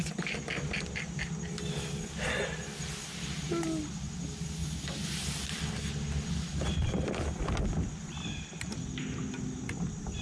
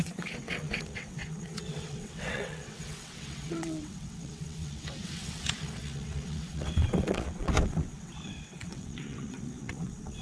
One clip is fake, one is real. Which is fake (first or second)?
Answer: second